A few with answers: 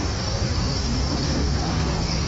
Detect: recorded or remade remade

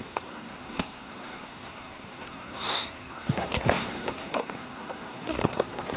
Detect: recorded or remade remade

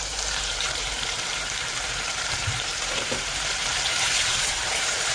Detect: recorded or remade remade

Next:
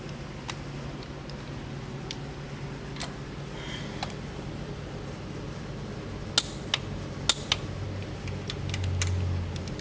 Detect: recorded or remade recorded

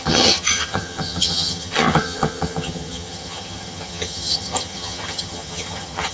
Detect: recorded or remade remade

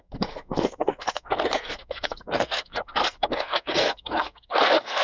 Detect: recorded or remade remade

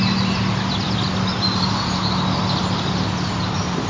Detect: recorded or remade recorded